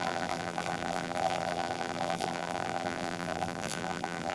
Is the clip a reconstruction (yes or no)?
yes